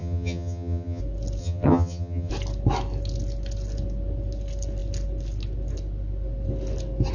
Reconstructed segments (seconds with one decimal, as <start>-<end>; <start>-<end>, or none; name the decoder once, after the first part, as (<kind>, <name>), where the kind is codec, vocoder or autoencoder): 0.0-1.0 (vocoder, HiFi-GAN); 1.4-2.3